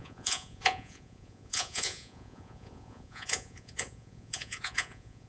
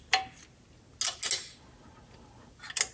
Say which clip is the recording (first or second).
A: second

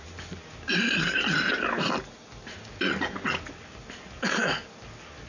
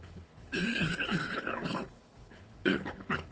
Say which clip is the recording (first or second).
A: first